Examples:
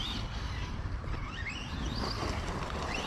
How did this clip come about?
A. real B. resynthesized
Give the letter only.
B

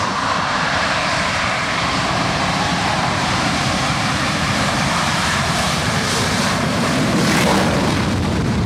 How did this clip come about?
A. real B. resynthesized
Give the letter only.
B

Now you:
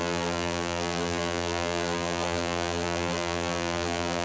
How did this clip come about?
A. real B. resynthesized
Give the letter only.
B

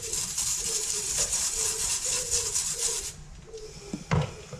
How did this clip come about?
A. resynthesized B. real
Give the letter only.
A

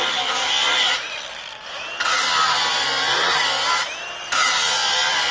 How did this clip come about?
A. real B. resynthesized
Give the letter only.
B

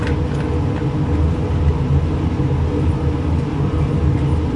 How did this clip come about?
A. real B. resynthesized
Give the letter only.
A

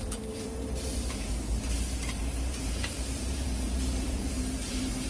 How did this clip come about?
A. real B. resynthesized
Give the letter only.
B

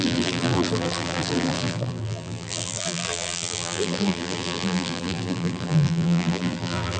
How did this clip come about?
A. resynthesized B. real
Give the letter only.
A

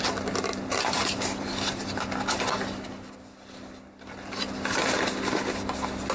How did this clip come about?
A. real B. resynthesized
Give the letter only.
A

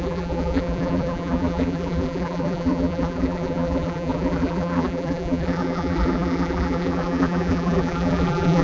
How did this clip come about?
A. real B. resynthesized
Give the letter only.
B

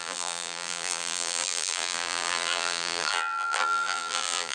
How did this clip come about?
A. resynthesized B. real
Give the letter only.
A